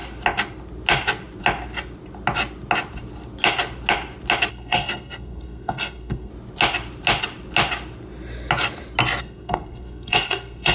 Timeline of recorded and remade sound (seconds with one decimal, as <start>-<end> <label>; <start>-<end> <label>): 0.0-4.5 recorded; 4.5-6.3 remade; 6.3-9.2 recorded; 9.2-10.7 remade